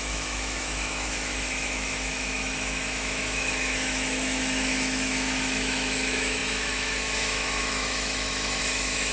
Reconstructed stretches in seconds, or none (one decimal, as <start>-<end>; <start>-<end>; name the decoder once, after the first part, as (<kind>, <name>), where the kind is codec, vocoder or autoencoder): 0.0-9.1 (autoencoder, DAC-VAE)